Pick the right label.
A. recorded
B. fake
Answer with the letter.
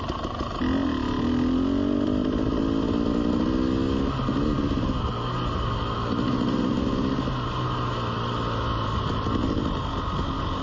A